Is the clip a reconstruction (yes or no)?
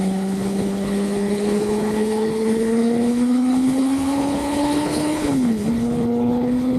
yes